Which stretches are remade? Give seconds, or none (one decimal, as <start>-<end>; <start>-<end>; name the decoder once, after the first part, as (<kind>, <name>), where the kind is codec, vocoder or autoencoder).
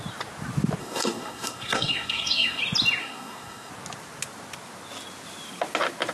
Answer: 0.8-2.6 (codec, SNAC); 3.0-3.7